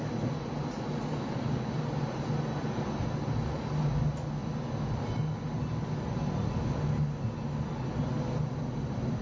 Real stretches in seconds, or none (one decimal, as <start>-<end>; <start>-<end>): 0.0-9.2